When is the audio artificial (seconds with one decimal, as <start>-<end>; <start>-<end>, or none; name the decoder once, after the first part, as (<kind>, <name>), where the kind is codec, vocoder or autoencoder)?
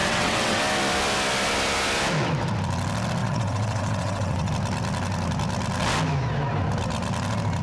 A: 0.0-0.6 (vocoder, WaveNeXt); 3.2-4.5